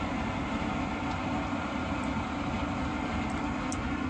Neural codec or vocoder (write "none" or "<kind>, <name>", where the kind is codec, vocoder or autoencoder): none